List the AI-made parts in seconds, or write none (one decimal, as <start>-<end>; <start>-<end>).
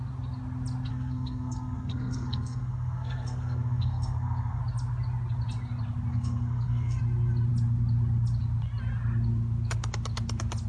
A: 0.9-4.6; 6.1-7.0